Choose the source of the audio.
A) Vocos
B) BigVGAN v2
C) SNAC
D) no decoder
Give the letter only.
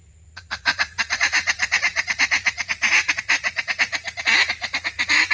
A